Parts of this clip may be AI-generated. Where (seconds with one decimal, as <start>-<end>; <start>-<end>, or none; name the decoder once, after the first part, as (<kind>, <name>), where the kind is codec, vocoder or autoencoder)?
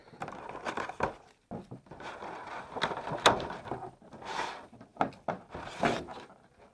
none